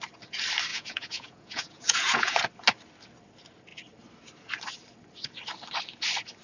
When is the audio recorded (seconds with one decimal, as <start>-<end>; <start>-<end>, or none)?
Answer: 0.0-0.7; 2.4-6.4